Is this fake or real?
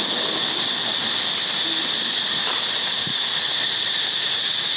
real